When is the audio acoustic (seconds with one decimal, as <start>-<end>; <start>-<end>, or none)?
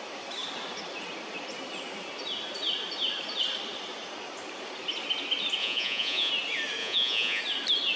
0.0-5.6; 6.3-6.8; 7.4-8.0